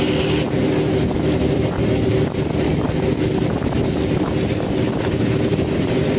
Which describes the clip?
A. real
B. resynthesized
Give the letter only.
A